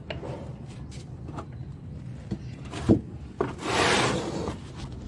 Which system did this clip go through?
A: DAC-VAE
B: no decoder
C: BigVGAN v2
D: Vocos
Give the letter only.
B